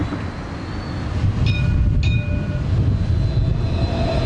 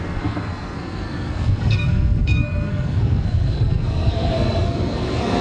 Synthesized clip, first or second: second